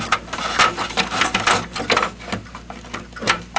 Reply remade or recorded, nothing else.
recorded